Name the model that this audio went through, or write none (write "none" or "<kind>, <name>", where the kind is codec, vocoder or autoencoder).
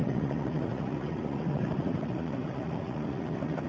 vocoder, Vocos